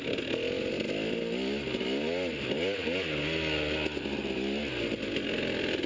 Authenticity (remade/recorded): recorded